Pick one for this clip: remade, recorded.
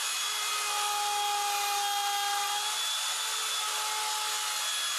recorded